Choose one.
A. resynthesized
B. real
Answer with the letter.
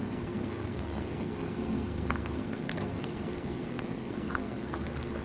A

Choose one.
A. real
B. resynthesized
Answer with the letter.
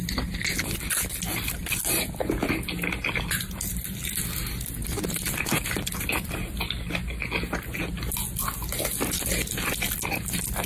A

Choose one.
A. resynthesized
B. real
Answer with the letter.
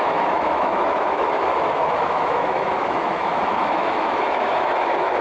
A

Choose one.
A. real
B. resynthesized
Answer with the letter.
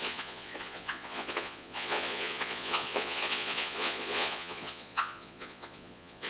B